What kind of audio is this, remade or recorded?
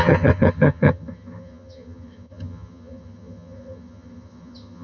remade